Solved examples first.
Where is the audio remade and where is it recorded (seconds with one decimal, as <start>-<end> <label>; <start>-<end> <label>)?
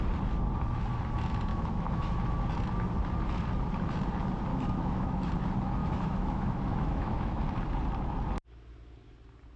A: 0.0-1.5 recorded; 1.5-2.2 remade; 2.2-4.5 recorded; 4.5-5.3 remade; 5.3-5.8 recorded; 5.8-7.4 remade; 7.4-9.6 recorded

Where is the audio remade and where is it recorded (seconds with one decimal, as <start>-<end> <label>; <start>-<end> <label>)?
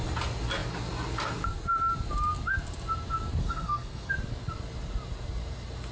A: 0.0-3.4 recorded; 3.4-4.1 remade; 4.1-5.9 recorded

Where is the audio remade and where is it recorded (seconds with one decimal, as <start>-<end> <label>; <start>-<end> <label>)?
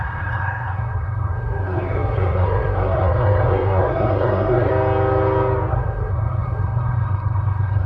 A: 0.0-4.7 remade; 4.7-5.7 recorded; 5.7-7.9 remade